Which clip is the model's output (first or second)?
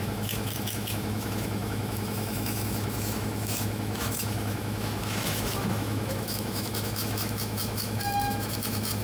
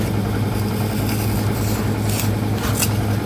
first